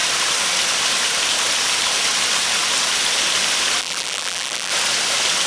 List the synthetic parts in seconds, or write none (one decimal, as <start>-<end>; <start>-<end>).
3.8-4.7